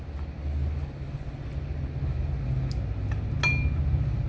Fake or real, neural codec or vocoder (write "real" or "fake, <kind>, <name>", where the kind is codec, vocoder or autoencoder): real